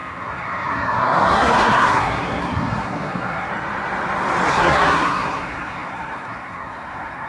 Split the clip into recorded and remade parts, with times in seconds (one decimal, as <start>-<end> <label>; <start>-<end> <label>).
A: 0.0-3.5 remade; 3.5-4.5 recorded; 4.5-7.3 remade